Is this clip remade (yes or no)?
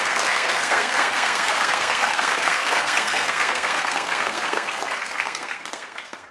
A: yes